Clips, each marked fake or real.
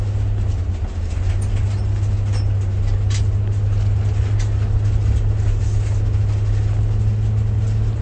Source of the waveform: real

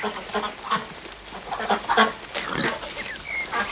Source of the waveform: real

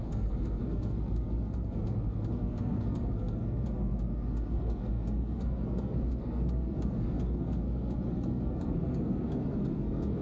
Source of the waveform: fake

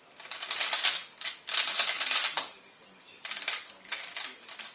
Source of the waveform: real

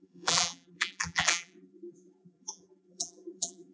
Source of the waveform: fake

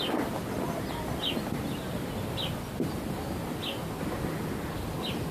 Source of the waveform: real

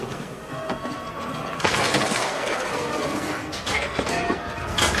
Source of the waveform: fake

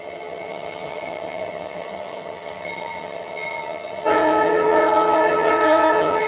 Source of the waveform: fake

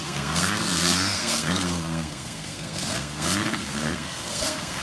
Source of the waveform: fake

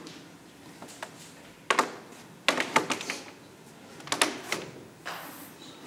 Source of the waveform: real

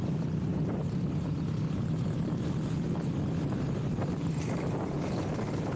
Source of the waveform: real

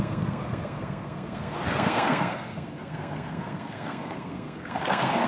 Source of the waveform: fake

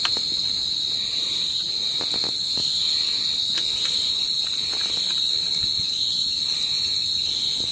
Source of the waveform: real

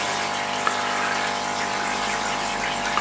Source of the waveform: real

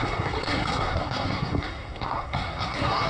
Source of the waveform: fake